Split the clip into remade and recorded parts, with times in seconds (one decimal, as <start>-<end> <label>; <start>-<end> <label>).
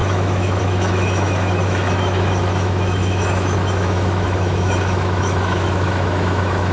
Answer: 0.0-6.7 remade